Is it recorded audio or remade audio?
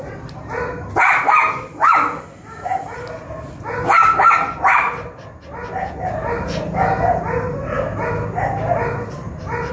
recorded